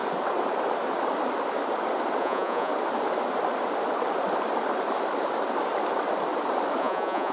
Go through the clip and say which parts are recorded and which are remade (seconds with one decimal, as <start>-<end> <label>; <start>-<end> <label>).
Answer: 0.0-2.2 recorded; 2.2-2.7 remade; 2.7-6.8 recorded; 6.8-7.3 remade